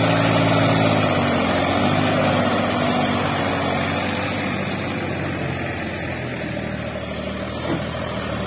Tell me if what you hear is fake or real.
real